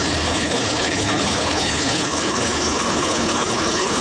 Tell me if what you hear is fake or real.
fake